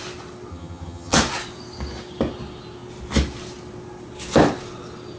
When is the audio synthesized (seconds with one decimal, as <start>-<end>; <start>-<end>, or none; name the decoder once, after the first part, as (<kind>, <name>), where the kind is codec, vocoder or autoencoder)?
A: 0.5-1.2 (vocoder, HiFi-GAN)